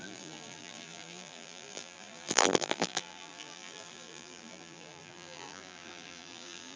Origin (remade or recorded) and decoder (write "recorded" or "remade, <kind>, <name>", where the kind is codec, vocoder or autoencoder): remade, vocoder, BigVGAN v2